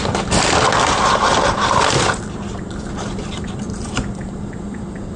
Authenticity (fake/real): fake